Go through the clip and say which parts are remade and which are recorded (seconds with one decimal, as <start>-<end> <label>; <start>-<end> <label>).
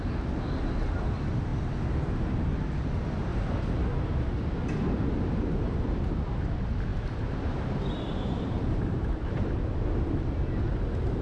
0.0-3.3 recorded; 3.3-4.3 remade; 4.3-6.9 recorded; 6.9-10.6 remade; 10.6-11.2 recorded